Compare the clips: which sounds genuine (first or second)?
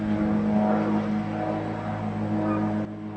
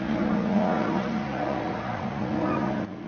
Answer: first